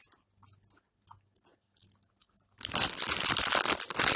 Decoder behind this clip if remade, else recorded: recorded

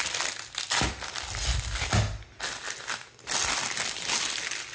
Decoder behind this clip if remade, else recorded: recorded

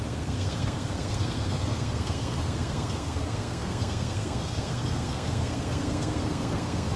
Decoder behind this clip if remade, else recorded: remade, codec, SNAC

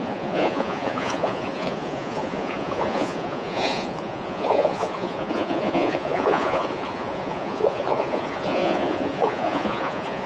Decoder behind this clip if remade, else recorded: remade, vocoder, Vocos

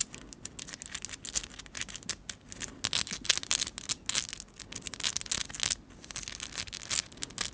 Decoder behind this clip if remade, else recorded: recorded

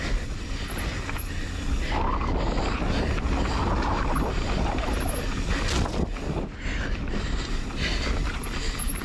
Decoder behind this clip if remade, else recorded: recorded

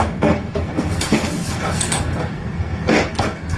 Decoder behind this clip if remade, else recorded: remade, codec, SNAC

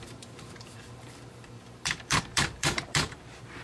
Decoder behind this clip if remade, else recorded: remade, vocoder, BigVGAN v2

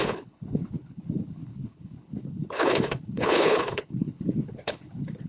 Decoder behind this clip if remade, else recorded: remade, codec, HILCodec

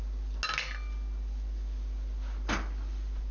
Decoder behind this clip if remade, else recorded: recorded